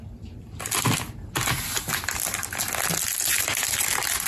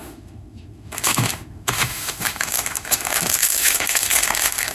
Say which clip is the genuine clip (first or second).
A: first